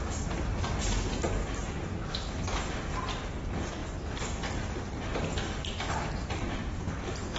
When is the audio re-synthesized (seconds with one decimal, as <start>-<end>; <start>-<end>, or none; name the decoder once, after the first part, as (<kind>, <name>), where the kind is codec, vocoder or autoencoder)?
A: 1.4-2.3 (autoencoder, DAC-VAE)